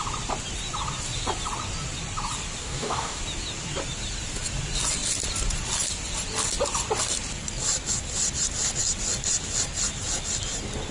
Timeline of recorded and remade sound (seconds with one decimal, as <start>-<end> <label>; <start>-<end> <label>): 0.0-2.6 recorded; 2.6-3.2 remade; 3.2-10.9 recorded